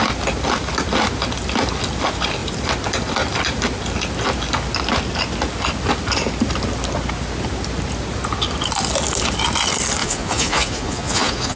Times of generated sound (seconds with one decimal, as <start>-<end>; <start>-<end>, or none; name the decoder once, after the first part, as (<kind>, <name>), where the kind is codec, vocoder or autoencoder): 10.0-11.6 (vocoder, Vocos)